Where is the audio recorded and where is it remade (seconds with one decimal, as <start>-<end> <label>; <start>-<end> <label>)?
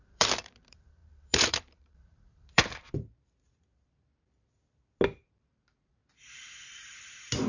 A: 0.0-4.1 remade; 4.1-5.4 recorded; 5.4-6.0 remade; 6.0-7.0 recorded; 7.0-7.5 remade